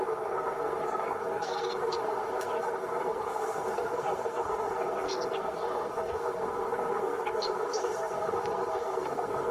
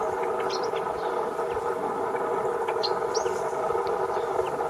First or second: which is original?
second